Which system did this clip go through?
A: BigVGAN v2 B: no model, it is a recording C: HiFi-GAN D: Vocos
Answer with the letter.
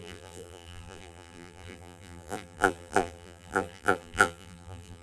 A